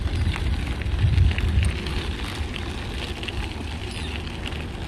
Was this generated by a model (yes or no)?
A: no